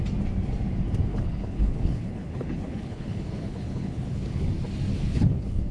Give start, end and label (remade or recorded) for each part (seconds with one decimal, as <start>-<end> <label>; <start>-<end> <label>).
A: 0.0-1.1 recorded; 1.1-4.5 remade; 4.5-4.9 recorded; 4.9-5.7 remade